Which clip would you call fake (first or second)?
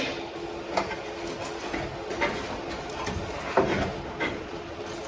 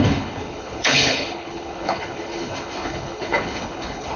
second